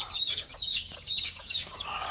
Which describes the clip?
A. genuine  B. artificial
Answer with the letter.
B